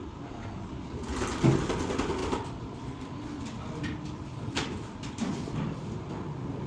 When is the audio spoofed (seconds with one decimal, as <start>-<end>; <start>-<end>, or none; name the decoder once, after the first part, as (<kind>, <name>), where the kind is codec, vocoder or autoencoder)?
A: 2.2-5.3 (vocoder, BigVGAN v2)